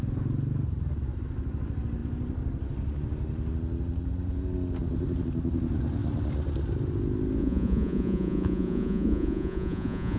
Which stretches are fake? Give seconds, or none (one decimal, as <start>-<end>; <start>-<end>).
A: 7.4-10.2